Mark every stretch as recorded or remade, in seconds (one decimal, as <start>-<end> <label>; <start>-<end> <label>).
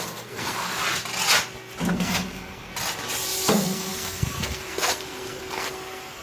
0.0-0.7 remade; 0.7-1.9 recorded; 1.9-2.7 remade; 2.7-3.5 recorded; 3.5-6.2 remade